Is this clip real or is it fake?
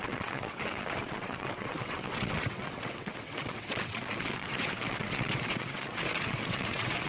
fake